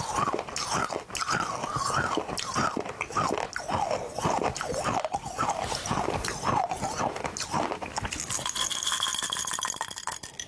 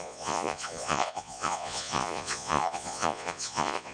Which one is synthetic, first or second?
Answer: second